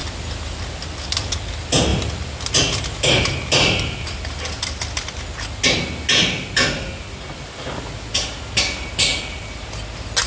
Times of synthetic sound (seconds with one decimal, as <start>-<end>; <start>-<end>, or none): none